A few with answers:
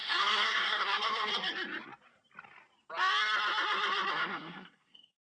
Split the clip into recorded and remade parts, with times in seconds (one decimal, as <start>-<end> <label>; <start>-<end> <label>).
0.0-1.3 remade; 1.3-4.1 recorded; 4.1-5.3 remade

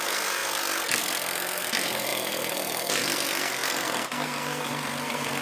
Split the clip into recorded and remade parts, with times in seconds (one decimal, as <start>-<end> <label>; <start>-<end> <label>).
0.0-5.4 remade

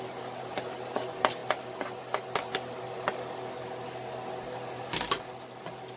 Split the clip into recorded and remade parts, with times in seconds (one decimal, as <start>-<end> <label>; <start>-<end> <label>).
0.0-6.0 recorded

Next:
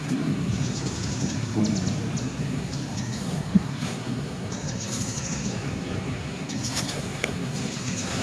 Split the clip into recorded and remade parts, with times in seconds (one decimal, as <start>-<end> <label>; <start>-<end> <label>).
0.0-1.6 remade; 1.6-2.2 recorded; 2.2-8.2 remade

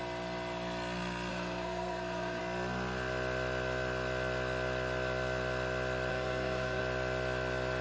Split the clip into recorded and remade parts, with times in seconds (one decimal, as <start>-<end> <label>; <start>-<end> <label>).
0.0-1.3 recorded; 1.3-2.4 remade; 2.4-6.1 recorded; 6.1-6.8 remade; 6.8-7.8 recorded